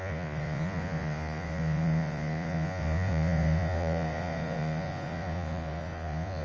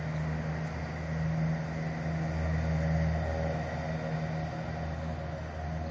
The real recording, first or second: second